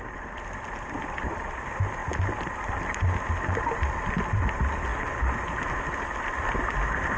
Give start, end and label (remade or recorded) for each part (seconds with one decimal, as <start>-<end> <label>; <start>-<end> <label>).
0.0-7.2 recorded